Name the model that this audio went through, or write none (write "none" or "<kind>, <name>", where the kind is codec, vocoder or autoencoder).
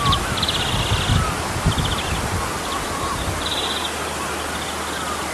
none